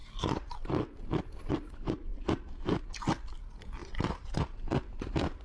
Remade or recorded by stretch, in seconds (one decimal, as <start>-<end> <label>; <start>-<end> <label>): 0.0-1.2 remade; 1.2-3.8 recorded; 3.8-4.4 remade; 4.4-5.4 recorded